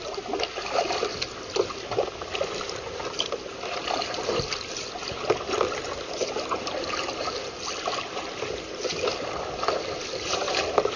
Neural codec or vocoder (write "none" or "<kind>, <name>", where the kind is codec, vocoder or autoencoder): none